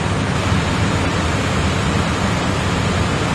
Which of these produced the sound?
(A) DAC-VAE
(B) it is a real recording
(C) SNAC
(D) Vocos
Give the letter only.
B